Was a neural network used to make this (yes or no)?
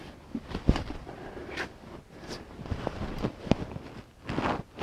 no